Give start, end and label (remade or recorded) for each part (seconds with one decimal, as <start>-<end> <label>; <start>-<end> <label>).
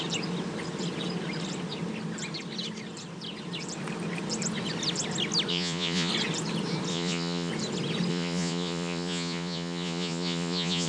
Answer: 0.0-5.5 recorded; 5.5-6.1 remade; 6.1-6.9 recorded; 6.9-7.5 remade; 7.5-8.1 recorded; 8.1-10.9 remade